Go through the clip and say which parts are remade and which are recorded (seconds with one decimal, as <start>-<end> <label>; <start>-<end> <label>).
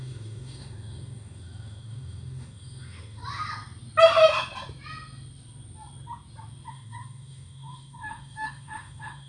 0.0-3.2 remade; 3.2-6.7 recorded; 6.7-9.3 remade